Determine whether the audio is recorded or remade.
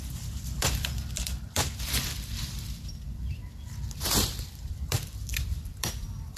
remade